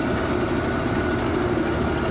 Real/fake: real